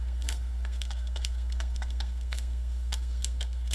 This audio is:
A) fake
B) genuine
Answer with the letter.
A